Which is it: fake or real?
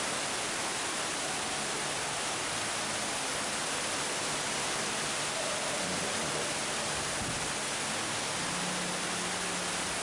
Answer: real